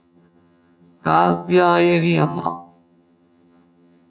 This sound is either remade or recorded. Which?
remade